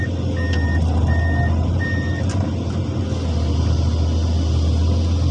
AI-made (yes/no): no